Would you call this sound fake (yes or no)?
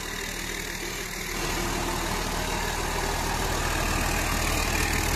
no